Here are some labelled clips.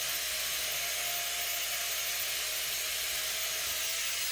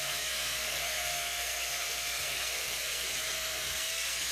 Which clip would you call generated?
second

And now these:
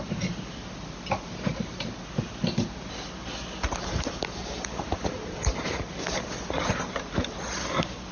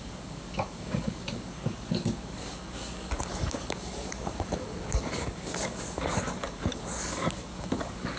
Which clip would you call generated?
second